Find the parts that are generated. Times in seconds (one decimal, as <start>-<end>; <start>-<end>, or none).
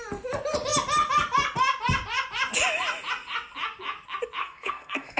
4.4-5.2